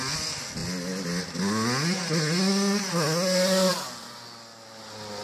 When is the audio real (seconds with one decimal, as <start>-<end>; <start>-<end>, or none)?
0.0-5.2